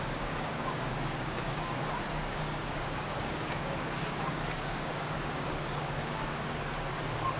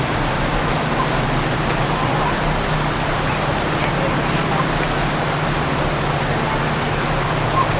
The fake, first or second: first